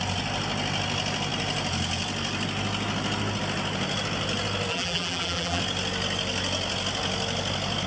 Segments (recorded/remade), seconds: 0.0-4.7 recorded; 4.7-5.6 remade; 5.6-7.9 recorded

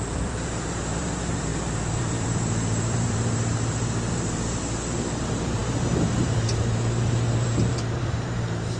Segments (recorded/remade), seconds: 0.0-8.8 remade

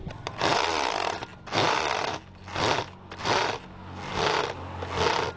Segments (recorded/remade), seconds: 0.0-5.4 recorded